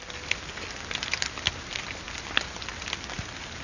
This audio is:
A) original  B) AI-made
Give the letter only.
A